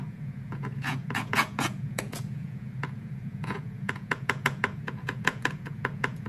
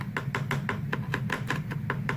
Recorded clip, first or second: second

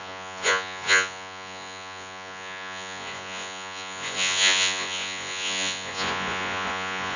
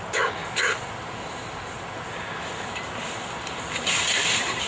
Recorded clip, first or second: second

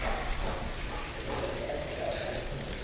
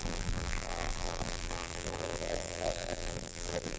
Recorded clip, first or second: first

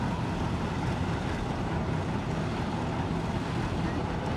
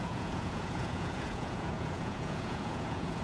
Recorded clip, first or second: first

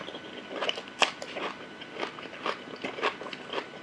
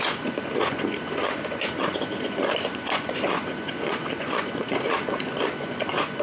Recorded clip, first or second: first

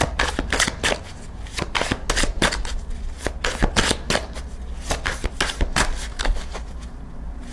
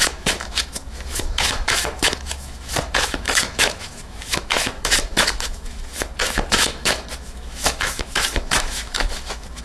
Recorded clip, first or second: first